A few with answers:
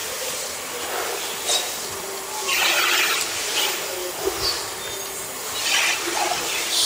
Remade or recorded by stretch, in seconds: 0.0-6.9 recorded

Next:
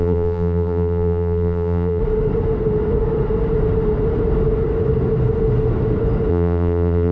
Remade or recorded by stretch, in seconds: 0.0-2.0 remade; 2.0-6.3 recorded; 6.3-7.1 remade

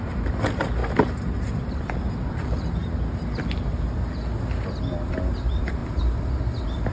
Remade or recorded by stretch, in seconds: 0.0-0.8 remade; 0.8-1.4 recorded; 1.4-2.8 remade; 2.8-5.1 recorded; 5.1-5.8 remade; 5.8-6.4 recorded; 6.4-6.9 remade

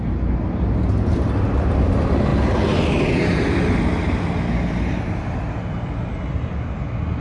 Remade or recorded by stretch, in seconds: 0.0-7.2 recorded

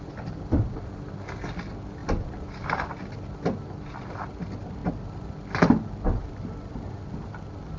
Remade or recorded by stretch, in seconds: 0.0-2.0 recorded; 2.0-2.9 remade; 2.9-7.8 recorded

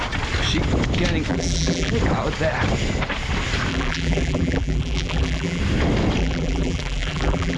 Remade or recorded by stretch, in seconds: 0.0-1.3 recorded; 1.3-1.9 remade; 1.9-3.7 recorded; 3.7-5.6 remade; 5.6-6.2 recorded; 6.2-7.6 remade